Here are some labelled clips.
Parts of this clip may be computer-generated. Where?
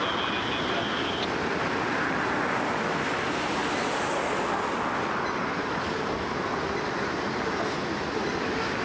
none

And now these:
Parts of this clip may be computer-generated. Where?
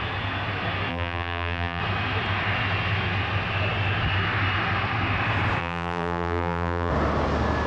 0.9-1.8; 5.6-6.9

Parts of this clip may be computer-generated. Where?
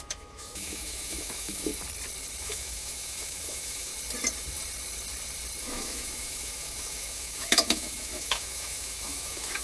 0.0-1.7; 2.4-3.9; 5.6-9.6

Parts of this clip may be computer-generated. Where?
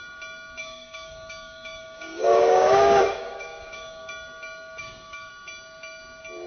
0.6-4.1; 4.8-5.3